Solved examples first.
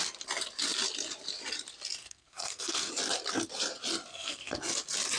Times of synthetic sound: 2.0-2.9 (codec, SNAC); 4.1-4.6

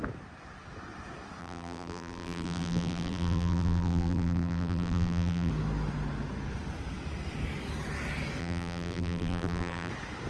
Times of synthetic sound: 1.4-5.5 (vocoder, BigVGAN v2); 8.4-9.9

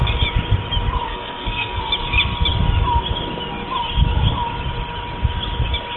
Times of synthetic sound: 1.1-1.8 (codec, SNAC)